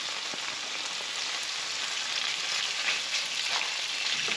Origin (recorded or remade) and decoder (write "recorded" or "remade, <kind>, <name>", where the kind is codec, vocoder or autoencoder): recorded